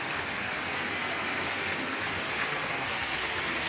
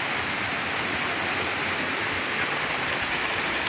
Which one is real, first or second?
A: second